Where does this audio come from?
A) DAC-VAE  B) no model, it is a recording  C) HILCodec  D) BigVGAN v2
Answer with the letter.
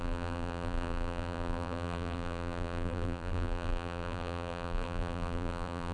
D